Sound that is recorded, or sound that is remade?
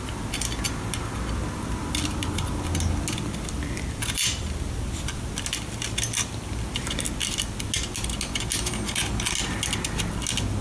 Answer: recorded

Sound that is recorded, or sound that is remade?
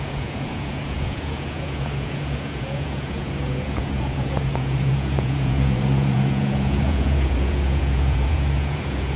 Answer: remade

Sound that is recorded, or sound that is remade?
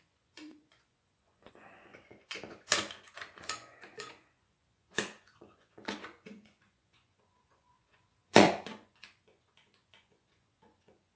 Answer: remade